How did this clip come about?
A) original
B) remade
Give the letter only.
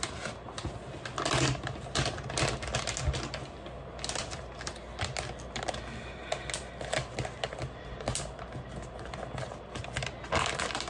A